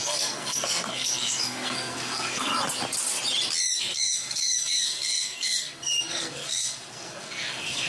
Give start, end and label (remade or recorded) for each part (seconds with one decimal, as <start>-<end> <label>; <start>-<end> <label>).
0.0-2.5 remade; 2.5-3.8 recorded; 3.8-7.9 remade